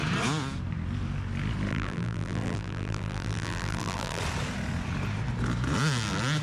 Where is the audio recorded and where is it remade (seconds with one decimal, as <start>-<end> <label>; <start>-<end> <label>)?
0.0-1.7 recorded; 1.7-4.2 remade; 4.2-6.4 recorded